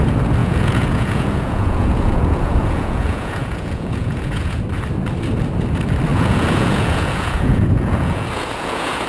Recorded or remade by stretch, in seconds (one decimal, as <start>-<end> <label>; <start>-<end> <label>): 0.0-0.4 recorded; 0.4-4.6 remade; 4.6-6.1 recorded; 6.1-9.1 remade